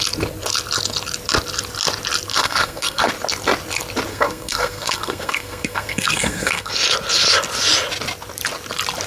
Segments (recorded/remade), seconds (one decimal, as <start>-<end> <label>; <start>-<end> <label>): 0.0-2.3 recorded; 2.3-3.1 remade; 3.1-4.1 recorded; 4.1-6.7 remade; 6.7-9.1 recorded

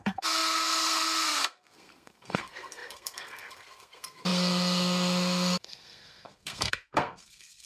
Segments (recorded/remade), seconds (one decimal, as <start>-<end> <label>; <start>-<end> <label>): 0.0-7.7 remade

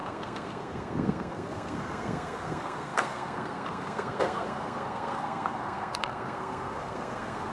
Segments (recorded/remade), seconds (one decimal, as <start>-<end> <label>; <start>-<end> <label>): 0.0-7.5 remade

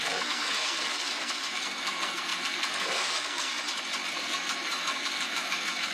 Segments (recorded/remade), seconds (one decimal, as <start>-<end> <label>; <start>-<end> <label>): 0.0-3.5 remade; 3.5-4.1 recorded; 4.1-5.9 remade

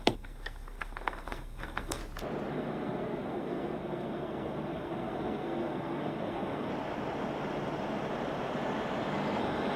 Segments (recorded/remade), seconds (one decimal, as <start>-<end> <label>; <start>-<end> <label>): 0.0-2.0 remade; 2.0-2.5 recorded; 2.5-6.7 remade; 6.7-9.4 recorded; 9.4-9.8 remade

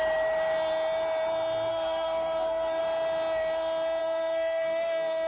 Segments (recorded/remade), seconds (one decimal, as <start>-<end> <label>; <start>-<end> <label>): 0.0-1.7 recorded; 1.7-2.8 remade; 2.8-4.0 recorded; 4.0-5.3 remade

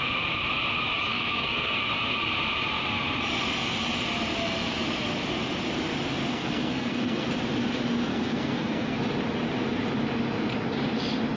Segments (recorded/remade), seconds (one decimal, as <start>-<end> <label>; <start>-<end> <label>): 0.0-1.1 recorded; 1.1-1.8 remade; 1.8-6.3 recorded; 6.3-7.3 remade; 7.3-8.1 recorded; 8.1-9.0 remade; 9.0-11.4 recorded